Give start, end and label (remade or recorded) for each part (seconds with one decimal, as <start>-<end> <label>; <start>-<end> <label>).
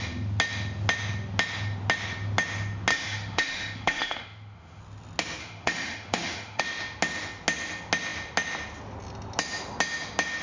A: 0.0-2.9 recorded; 2.9-4.8 remade; 4.8-5.4 recorded; 5.4-6.6 remade; 6.6-10.4 recorded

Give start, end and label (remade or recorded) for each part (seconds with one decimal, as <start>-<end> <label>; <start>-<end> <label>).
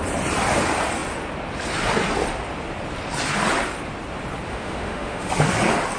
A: 0.0-4.5 recorded; 4.5-5.3 remade; 5.3-6.0 recorded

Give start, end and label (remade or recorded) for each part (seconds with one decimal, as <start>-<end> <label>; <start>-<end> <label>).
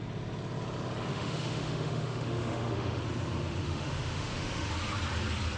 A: 0.0-1.1 recorded; 1.1-3.0 remade; 3.0-3.6 recorded; 3.6-4.7 remade; 4.7-5.6 recorded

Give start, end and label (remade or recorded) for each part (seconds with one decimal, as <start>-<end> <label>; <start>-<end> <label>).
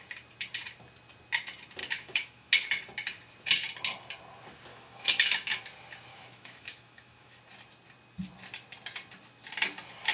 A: 0.0-1.8 recorded; 1.8-2.7 remade; 2.7-4.7 recorded; 4.7-5.6 remade; 5.6-6.1 recorded; 6.1-7.4 remade; 7.4-10.1 recorded